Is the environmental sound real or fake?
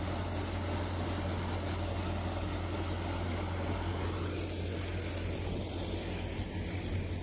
real